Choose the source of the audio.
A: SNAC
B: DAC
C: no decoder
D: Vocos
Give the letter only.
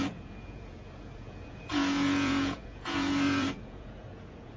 D